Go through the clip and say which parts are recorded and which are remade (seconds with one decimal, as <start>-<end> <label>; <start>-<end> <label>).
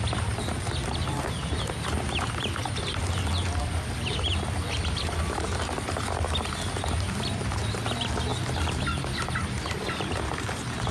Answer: 0.0-2.6 recorded; 2.6-5.6 remade; 5.6-8.3 recorded; 8.3-9.3 remade; 9.3-10.9 recorded